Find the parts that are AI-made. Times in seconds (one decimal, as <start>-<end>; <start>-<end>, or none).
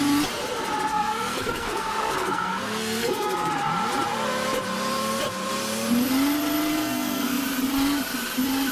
0.9-3.5; 6.7-7.4